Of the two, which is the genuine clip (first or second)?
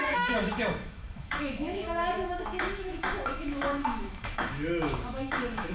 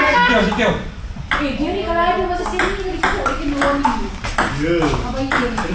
second